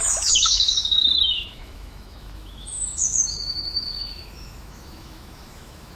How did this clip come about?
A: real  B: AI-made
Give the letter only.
B